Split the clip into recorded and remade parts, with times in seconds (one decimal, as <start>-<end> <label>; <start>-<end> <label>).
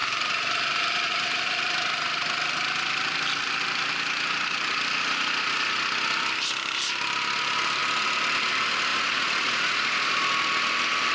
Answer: 0.0-8.9 recorded; 8.9-10.1 remade; 10.1-11.1 recorded